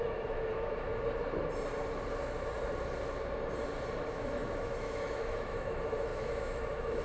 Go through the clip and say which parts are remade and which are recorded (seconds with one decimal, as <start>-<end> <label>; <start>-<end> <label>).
0.0-0.9 remade; 0.9-4.1 recorded; 4.1-7.0 remade